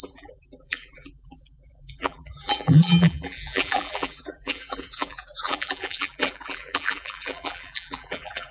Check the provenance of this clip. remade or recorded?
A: remade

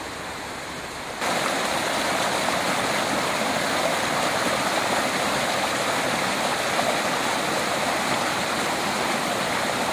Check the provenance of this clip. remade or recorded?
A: remade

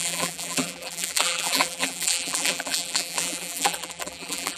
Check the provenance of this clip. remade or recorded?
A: remade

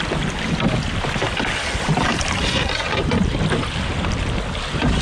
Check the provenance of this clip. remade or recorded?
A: recorded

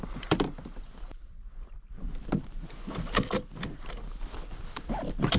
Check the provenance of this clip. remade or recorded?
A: remade